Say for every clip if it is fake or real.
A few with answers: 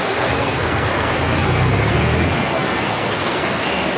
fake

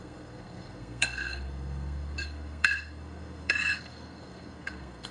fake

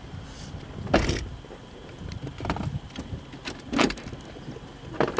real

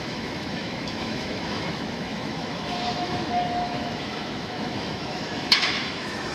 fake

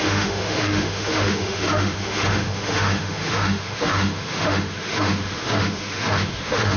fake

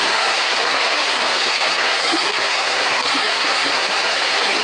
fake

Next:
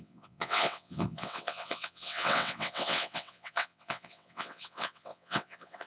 fake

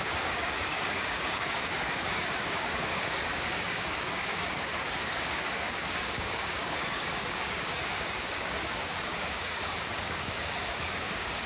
fake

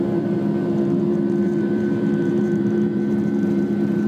fake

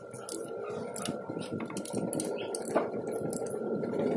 real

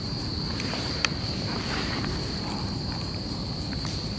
fake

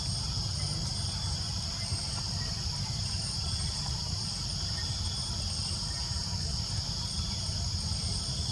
fake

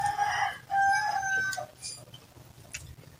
real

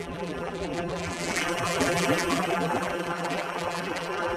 fake